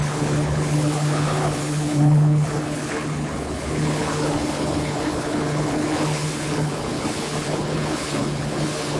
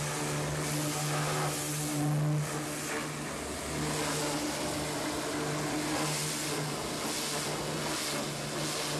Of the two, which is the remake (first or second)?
first